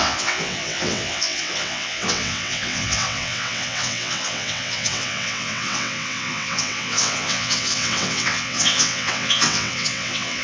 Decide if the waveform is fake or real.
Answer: fake